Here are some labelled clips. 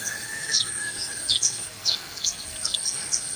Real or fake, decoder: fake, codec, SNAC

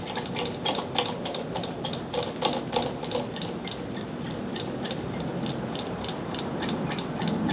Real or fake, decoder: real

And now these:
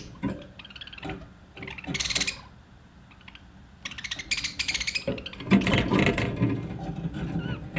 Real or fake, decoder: real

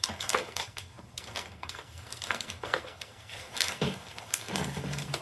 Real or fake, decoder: fake, codec, SNAC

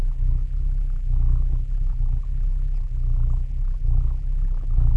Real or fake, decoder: fake, vocoder, BigVGAN v2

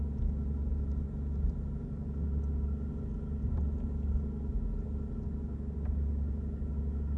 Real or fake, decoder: real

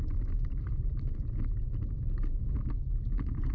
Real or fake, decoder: fake, vocoder, BigVGAN v2